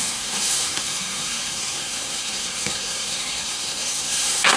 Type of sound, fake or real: fake